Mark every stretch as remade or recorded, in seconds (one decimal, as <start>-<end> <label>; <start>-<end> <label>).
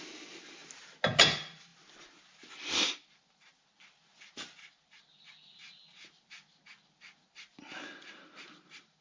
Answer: 0.0-9.0 recorded